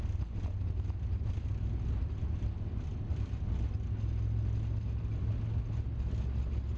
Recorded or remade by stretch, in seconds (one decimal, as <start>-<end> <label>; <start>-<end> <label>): 0.0-6.8 recorded